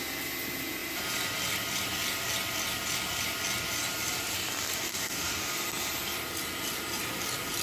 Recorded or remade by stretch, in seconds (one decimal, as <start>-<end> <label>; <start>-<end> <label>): 0.0-4.9 recorded; 4.9-5.5 remade; 5.5-7.6 recorded